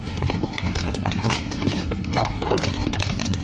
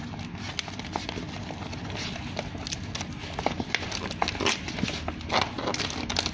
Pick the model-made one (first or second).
first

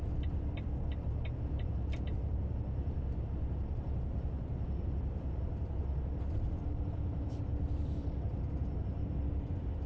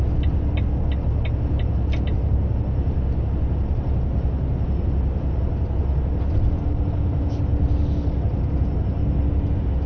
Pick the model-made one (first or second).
first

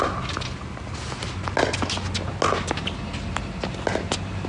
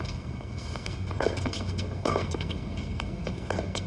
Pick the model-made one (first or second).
second